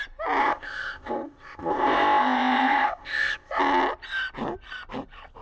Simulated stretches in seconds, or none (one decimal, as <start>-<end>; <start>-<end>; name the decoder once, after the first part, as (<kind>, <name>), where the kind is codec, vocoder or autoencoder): 0.4-3.6 (codec, ZipCodec)